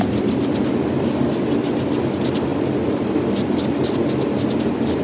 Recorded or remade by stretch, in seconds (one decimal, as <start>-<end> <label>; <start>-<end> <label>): 0.0-5.0 recorded